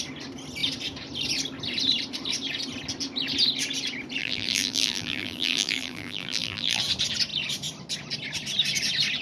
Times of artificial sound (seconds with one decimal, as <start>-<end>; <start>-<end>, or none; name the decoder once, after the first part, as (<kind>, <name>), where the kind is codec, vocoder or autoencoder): 4.2-6.8 (vocoder, BigVGAN v2)